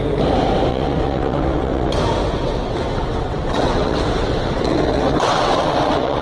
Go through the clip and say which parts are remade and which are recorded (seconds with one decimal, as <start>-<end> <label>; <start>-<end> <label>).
0.0-0.7 recorded; 0.7-1.9 remade; 1.9-2.3 recorded; 2.3-6.2 remade